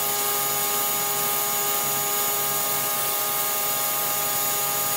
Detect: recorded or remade recorded